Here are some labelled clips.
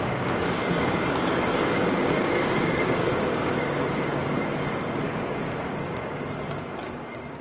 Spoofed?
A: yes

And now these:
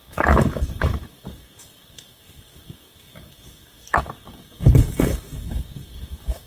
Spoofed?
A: yes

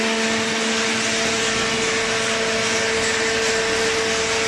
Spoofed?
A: no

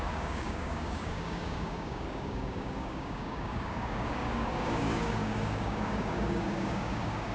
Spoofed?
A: yes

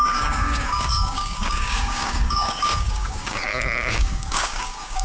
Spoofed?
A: yes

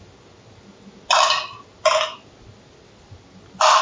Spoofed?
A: no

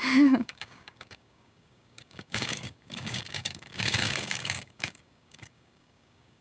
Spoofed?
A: yes